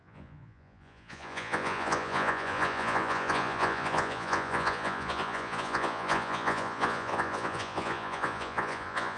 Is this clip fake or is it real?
fake